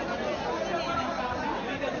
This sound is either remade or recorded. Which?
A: recorded